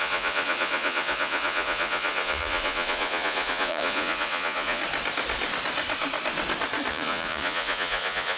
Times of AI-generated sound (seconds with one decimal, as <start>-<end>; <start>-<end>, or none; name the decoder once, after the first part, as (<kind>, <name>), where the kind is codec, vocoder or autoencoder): 0.0-4.8 (vocoder, Vocos); 6.9-8.4